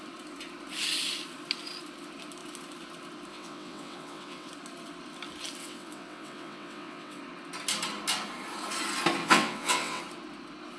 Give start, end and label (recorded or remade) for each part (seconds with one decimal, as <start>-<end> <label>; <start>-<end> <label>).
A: 0.0-3.3 recorded; 3.3-4.5 remade; 4.5-5.6 recorded; 5.6-7.2 remade; 7.2-9.2 recorded; 9.2-10.0 remade; 10.0-10.8 recorded